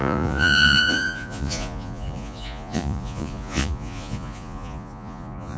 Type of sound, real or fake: fake